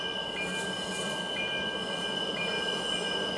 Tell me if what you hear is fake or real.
real